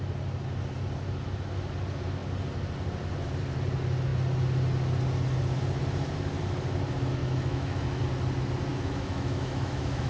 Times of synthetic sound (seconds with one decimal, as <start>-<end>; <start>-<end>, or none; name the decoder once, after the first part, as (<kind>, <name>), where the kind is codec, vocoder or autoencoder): 7.2-8.0 (autoencoder, DAC-VAE); 8.7-10.1